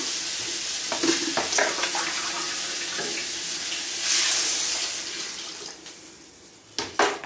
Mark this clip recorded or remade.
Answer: recorded